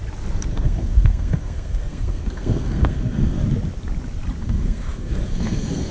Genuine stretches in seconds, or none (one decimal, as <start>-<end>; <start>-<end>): 0.0-0.5; 3.4-4.4